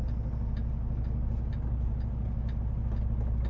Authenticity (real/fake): real